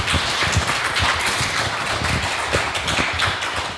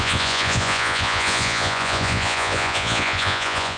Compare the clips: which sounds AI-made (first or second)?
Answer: second